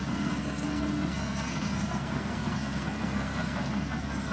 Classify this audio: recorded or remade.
remade